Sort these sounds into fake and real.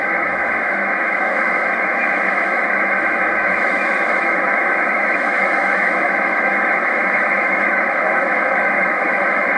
fake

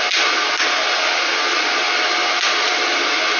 real